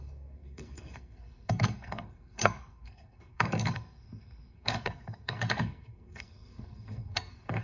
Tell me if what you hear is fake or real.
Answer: fake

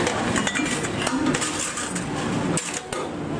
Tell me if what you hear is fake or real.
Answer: real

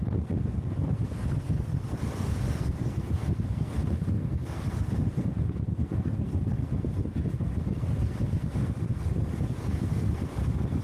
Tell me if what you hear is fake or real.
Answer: fake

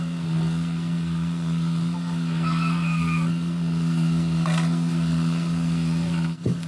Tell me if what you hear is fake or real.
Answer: fake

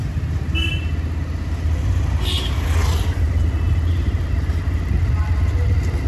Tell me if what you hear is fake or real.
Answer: real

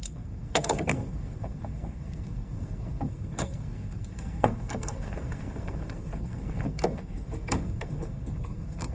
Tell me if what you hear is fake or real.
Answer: fake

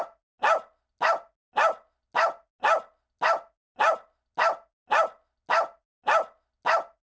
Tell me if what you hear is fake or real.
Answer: real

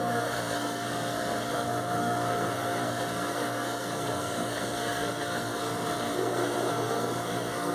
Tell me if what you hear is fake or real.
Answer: fake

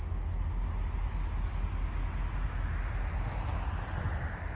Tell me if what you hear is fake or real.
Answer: real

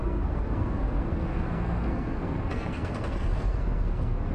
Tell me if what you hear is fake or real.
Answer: fake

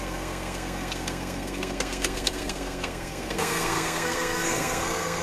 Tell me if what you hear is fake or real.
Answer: fake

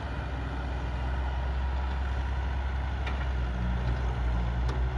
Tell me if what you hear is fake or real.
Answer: real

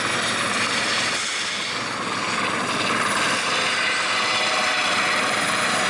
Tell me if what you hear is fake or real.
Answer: real